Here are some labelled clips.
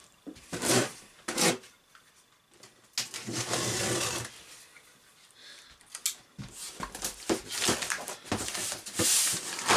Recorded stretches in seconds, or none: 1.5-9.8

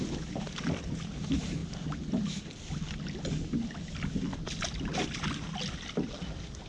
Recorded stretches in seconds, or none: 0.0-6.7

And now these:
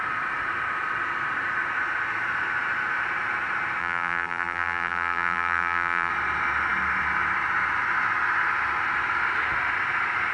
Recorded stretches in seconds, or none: 0.0-3.8; 6.1-10.3

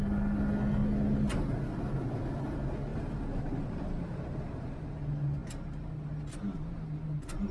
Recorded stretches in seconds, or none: 0.0-2.9; 4.8-7.5

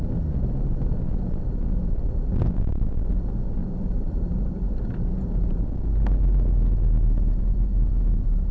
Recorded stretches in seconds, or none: 0.0-3.6; 5.6-8.5

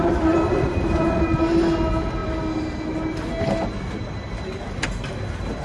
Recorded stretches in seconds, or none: 0.0-5.6

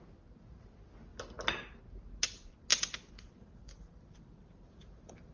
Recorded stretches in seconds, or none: 0.0-2.7

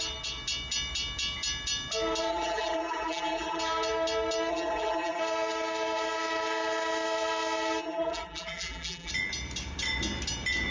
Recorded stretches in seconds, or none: 0.0-2.3; 3.6-4.5; 5.2-7.8; 9.1-10.7